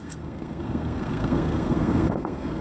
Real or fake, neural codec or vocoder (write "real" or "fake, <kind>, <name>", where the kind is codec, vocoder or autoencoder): fake, codec, SNAC